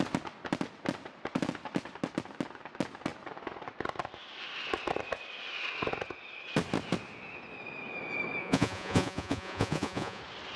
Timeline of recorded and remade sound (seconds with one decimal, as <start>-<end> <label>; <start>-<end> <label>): 0.0-8.4 recorded; 8.4-10.2 remade; 10.2-10.6 recorded